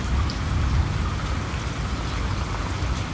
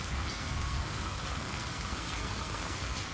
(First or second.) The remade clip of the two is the second